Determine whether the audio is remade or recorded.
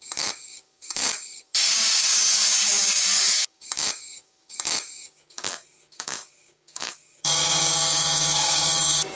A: remade